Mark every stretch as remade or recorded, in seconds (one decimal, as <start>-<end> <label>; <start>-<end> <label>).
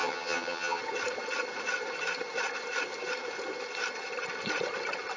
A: 0.0-0.8 remade; 0.8-5.2 recorded